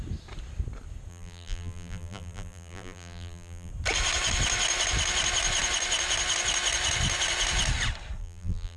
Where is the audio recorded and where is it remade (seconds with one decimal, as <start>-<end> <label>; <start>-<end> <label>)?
0.0-1.1 recorded; 1.1-3.7 remade; 3.7-8.2 recorded; 8.2-8.8 remade